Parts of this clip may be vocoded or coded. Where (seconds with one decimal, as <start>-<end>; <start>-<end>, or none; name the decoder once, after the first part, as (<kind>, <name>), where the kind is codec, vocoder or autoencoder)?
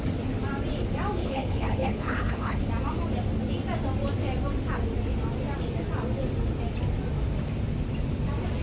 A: 1.2-2.6 (codec, HILCodec)